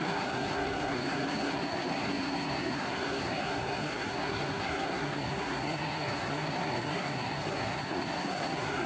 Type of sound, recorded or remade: remade